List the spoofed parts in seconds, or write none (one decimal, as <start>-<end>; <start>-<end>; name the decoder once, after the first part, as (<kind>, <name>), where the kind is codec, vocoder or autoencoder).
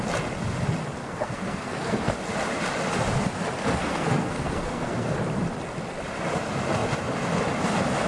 1.0-2.1 (codec, SNAC); 3.8-5.2